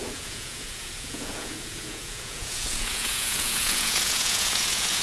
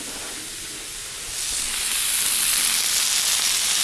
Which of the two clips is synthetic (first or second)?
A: first